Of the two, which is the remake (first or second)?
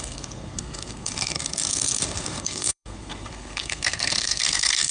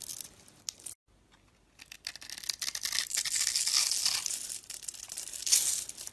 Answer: first